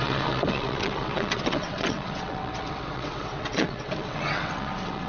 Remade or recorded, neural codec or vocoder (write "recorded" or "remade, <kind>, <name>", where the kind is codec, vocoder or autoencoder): remade, vocoder, WaveNeXt